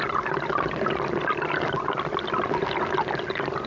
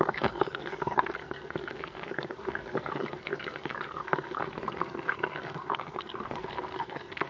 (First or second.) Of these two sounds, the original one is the first